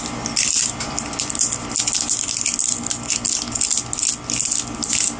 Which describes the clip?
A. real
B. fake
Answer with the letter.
A